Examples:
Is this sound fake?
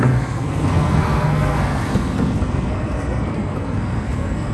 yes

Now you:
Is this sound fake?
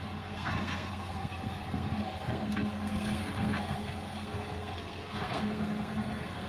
yes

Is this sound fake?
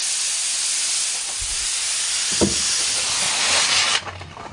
no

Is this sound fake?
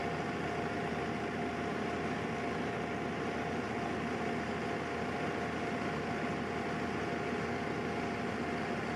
no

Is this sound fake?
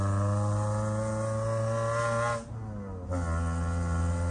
no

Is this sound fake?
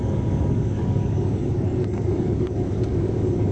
yes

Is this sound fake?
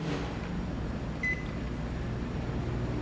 no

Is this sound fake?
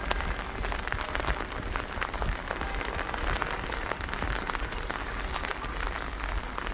no